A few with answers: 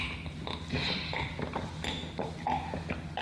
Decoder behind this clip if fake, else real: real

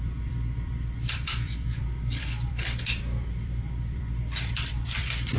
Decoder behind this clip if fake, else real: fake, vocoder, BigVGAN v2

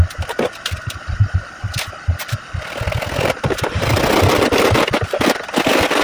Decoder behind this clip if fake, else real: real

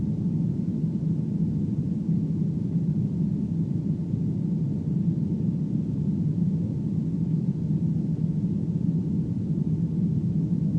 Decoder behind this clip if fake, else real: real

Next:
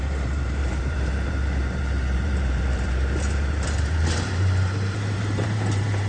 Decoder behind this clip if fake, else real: fake, vocoder, BigVGAN v2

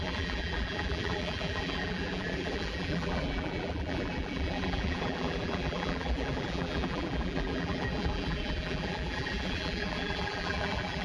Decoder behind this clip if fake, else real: fake, vocoder, BigVGAN v2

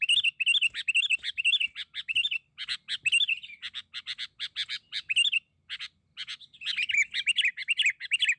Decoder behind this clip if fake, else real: real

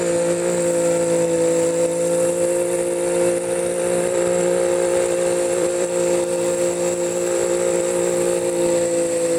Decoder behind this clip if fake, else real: fake, vocoder, BigVGAN v2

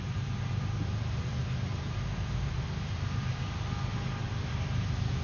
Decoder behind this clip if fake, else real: fake, vocoder, BigVGAN v2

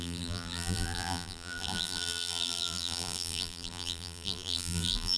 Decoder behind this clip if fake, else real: fake, vocoder, BigVGAN v2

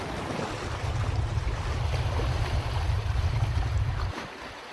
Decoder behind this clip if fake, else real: real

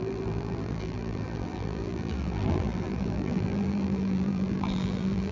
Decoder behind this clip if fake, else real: fake, vocoder, BigVGAN v2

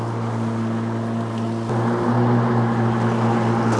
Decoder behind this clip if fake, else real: real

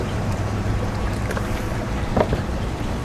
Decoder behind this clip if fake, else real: fake, vocoder, BigVGAN v2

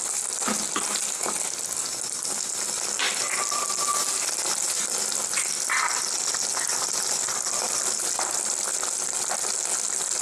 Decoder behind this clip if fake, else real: real